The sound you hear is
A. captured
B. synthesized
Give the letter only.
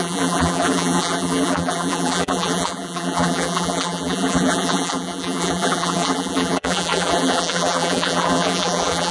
B